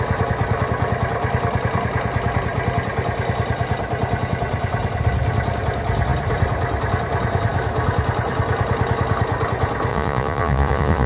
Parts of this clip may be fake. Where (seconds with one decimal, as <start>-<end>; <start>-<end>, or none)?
9.9-11.1